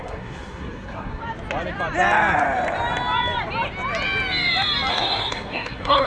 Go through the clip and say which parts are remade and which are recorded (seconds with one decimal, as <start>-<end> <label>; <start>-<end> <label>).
0.0-1.2 remade; 1.2-4.9 recorded; 4.9-6.1 remade